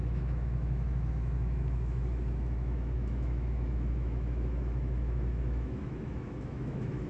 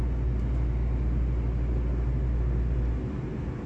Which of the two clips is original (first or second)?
second